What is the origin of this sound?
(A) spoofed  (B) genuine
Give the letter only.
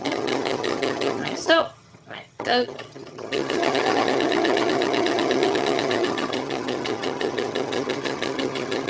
A